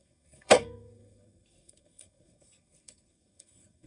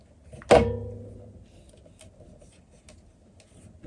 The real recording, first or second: second